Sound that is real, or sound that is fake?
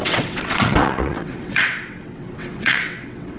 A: fake